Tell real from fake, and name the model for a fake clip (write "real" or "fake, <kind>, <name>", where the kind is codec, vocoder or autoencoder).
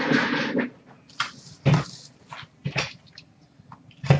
real